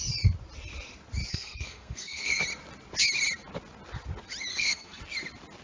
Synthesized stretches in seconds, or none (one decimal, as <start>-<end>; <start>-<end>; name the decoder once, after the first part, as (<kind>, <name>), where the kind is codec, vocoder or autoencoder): 1.3-2.4 (codec, SNAC); 4.5-5.0